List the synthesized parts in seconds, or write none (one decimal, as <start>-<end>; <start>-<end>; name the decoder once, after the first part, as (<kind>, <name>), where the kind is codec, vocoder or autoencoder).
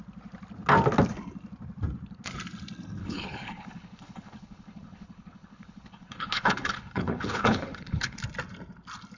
3.0-8.2 (codec, HILCodec)